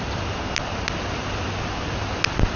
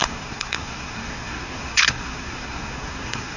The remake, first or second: second